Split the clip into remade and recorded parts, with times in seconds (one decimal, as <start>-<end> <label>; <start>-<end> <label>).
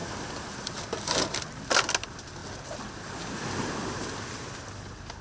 0.0-5.2 recorded